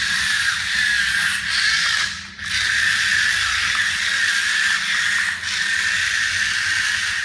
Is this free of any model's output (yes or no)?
yes